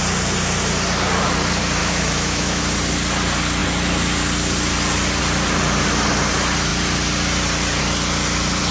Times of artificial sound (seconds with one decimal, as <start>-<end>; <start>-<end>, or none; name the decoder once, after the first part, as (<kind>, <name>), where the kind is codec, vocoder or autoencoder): 1.8-2.6 (autoencoder, DAC-VAE)